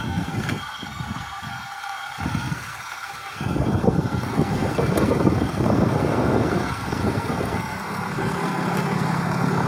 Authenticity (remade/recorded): remade